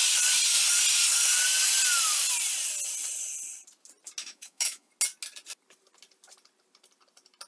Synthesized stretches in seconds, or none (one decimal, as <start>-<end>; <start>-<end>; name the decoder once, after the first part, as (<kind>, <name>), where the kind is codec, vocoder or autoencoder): 4.2-4.9 (autoencoder, DAC-VAE)